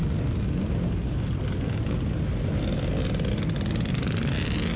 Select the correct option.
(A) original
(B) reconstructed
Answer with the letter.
A